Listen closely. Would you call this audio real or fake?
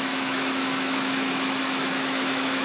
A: fake